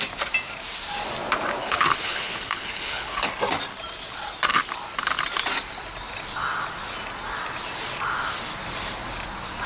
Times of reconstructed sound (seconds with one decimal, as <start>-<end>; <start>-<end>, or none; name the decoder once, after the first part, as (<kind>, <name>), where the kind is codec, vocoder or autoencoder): 1.6-3.3 (codec, HILCodec)